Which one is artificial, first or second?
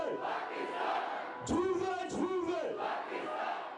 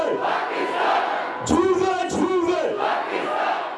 second